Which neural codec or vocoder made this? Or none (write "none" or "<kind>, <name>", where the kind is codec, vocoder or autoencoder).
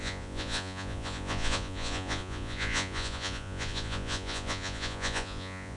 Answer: vocoder, Vocos